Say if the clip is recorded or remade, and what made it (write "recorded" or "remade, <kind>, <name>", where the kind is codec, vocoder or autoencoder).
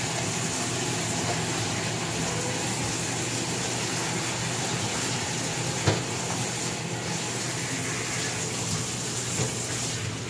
recorded